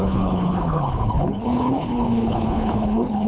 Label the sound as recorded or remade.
remade